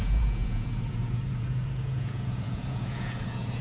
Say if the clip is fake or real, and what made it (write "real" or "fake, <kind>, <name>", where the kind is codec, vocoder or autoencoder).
fake, vocoder, Vocos